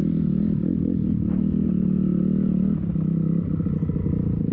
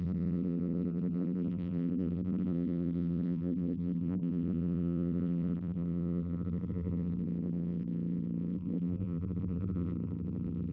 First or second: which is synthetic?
second